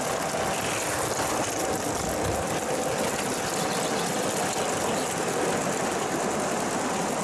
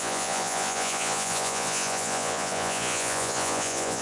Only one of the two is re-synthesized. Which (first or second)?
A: second